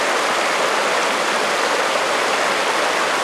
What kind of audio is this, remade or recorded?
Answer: recorded